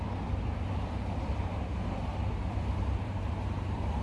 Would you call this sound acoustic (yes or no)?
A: no